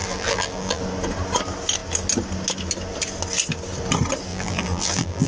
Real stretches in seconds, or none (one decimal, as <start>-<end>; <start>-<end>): 0.8-4.3